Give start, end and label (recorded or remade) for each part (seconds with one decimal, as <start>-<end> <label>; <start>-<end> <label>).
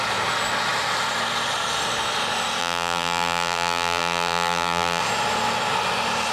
0.0-2.6 recorded; 2.6-5.0 remade; 5.0-6.3 recorded